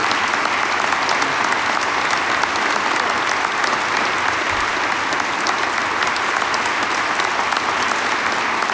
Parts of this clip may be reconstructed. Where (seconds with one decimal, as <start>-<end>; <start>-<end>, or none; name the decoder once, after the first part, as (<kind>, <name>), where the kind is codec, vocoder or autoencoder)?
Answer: 0.0-1.1 (vocoder, BigVGAN v2)